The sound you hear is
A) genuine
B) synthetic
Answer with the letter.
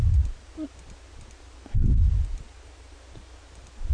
A